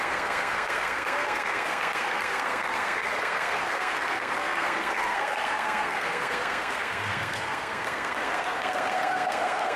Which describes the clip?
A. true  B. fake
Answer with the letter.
B